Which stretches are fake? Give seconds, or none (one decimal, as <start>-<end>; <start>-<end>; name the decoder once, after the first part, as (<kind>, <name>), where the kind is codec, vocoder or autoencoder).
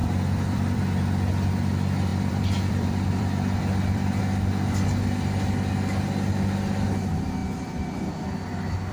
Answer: 0.0-0.8 (vocoder, BigVGAN v2); 2.1-4.2; 7.4-8.0